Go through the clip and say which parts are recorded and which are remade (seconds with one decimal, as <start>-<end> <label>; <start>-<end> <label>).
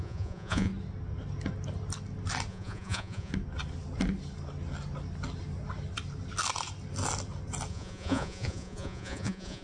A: 0.0-0.7 remade; 0.7-2.5 recorded; 2.5-3.3 remade; 3.3-7.7 recorded; 7.7-9.6 remade